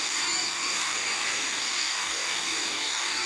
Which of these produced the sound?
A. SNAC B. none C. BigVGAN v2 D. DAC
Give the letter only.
D